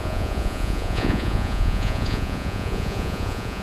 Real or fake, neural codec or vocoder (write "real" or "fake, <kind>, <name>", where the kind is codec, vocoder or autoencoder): fake, vocoder, Vocos